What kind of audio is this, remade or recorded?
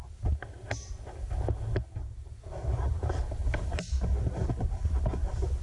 recorded